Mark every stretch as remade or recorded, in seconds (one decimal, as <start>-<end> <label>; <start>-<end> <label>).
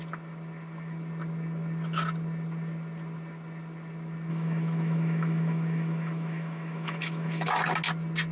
0.0-4.3 recorded; 4.3-7.5 remade; 7.5-8.3 recorded